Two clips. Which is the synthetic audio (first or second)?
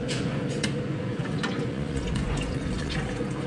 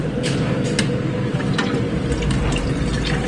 first